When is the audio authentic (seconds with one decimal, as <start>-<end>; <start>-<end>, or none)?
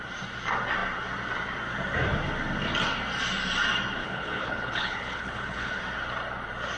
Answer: 0.0-4.0; 5.8-6.8